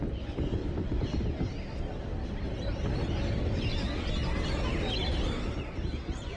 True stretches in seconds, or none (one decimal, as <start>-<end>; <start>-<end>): 0.0-0.6; 1.8-6.4